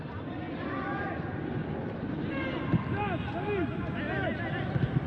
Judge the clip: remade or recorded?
recorded